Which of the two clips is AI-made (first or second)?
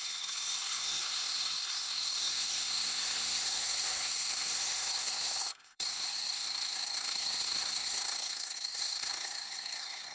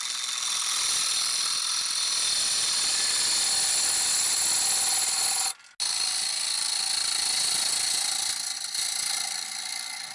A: first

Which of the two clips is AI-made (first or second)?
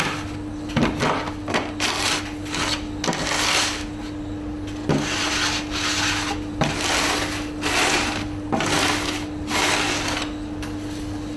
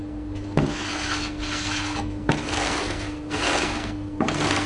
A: second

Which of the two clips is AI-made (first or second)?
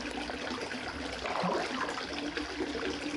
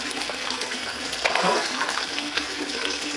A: second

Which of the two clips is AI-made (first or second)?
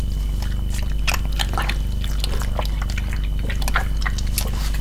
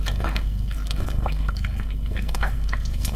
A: second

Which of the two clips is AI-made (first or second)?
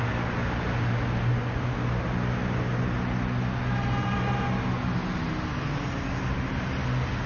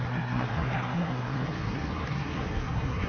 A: second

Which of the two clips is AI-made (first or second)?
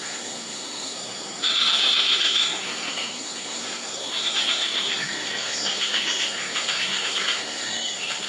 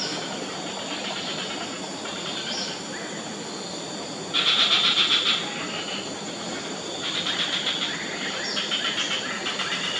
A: first